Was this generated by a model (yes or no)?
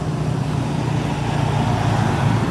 no